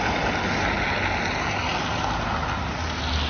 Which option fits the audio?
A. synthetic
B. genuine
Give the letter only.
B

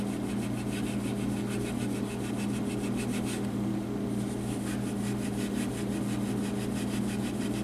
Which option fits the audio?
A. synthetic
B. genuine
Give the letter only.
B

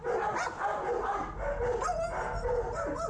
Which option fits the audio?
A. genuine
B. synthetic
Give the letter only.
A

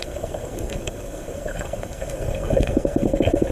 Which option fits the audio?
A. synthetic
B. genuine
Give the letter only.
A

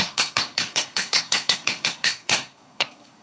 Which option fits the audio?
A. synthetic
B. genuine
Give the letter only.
A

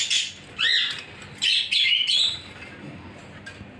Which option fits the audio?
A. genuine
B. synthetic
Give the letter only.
A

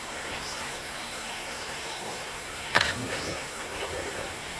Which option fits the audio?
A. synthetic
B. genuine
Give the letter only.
A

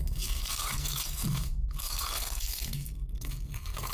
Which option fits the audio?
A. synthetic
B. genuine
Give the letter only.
A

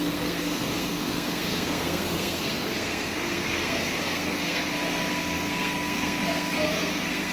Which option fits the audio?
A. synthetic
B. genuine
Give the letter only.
A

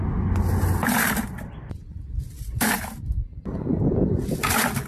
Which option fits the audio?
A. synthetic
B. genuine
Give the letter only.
B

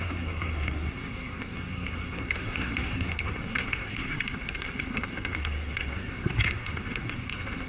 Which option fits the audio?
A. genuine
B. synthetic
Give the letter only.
B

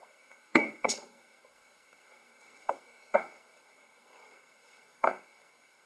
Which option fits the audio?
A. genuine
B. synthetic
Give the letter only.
B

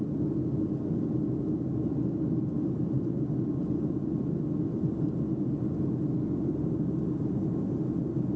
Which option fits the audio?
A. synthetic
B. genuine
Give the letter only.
B